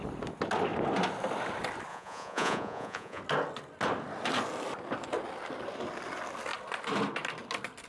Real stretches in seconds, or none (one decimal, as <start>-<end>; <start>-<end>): 0.0-1.9; 3.2-7.9